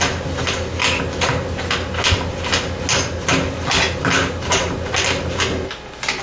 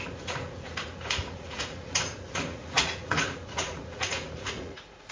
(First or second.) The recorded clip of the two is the first